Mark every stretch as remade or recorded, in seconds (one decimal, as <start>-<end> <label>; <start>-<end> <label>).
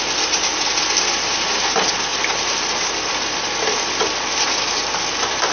0.0-0.5 remade; 0.5-1.0 recorded; 1.0-5.5 remade